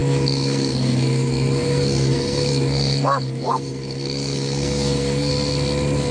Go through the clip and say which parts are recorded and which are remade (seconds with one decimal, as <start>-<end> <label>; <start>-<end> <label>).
0.0-5.3 remade; 5.3-6.1 recorded